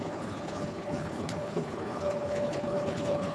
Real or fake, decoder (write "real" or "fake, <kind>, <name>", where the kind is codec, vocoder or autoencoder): fake, codec, HILCodec